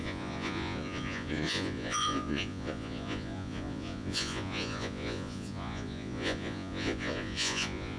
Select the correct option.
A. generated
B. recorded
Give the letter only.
A